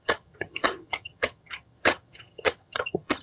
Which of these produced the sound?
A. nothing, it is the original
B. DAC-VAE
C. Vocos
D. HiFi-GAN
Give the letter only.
D